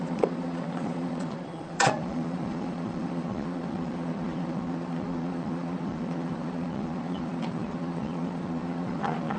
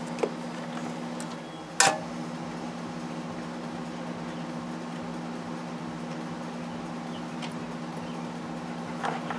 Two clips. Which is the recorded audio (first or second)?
second